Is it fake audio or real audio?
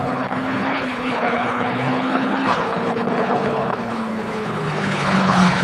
fake